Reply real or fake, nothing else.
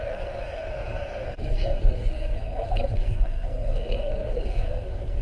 fake